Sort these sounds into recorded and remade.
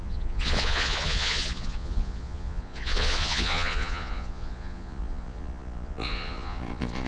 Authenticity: remade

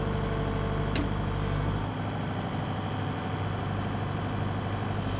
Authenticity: recorded